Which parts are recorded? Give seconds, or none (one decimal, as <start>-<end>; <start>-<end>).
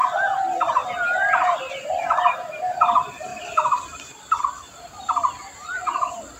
0.0-3.3; 4.4-6.4